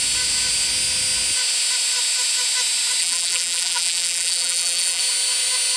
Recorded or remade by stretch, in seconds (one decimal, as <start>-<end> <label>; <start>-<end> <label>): 0.0-3.0 recorded; 3.0-5.0 remade; 5.0-5.8 recorded